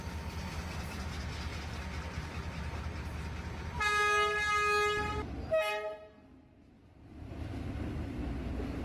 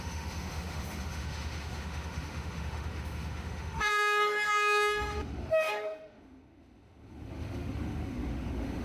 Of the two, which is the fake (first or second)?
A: second